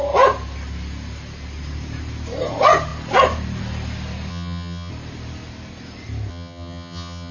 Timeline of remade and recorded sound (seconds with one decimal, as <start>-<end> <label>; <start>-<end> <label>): 0.0-4.3 recorded; 4.3-4.9 remade; 4.9-6.3 recorded; 6.3-7.3 remade